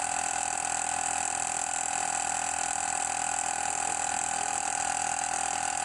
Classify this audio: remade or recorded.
recorded